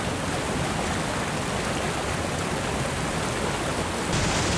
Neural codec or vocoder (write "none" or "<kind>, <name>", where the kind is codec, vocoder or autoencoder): none